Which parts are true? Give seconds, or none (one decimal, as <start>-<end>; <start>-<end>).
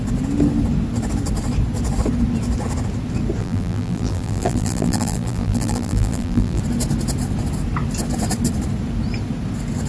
0.0-3.4; 6.6-9.9